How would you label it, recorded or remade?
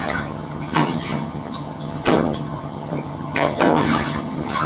remade